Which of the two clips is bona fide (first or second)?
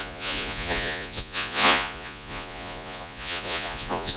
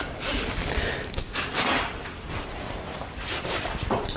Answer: second